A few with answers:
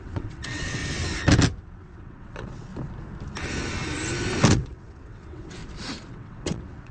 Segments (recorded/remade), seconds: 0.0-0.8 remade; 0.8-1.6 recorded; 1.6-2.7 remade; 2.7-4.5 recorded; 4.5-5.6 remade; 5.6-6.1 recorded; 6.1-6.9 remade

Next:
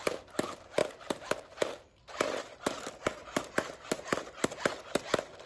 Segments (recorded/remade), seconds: 0.0-5.5 recorded

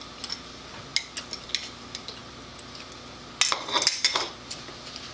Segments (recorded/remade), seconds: 0.0-5.1 recorded

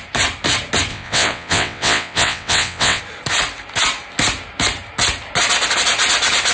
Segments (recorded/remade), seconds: 0.0-0.9 recorded; 0.9-3.0 remade; 3.0-6.5 recorded

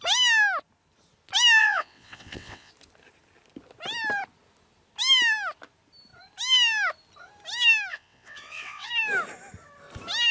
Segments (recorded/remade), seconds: 0.0-1.6 recorded; 1.6-2.7 remade; 2.7-7.9 recorded; 7.9-8.9 remade; 8.9-10.3 recorded

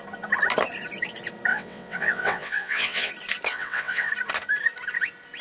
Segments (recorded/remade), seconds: 0.0-1.5 recorded; 1.5-3.1 remade; 3.1-3.5 recorded; 3.5-4.1 remade; 4.1-5.4 recorded